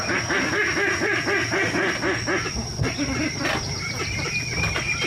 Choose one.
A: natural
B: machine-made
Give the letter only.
A